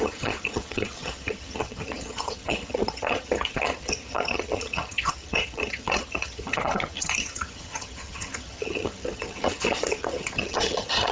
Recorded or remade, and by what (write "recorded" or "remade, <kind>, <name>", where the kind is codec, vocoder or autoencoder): remade, vocoder, HiFi-GAN